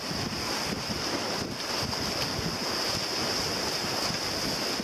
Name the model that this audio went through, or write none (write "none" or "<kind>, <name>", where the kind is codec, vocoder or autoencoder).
none